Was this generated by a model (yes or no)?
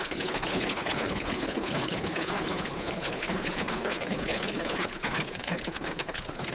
yes